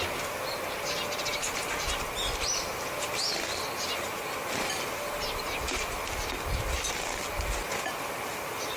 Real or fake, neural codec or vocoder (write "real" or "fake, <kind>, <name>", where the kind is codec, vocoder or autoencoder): real